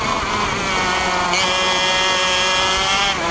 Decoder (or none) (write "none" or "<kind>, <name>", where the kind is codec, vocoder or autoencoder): none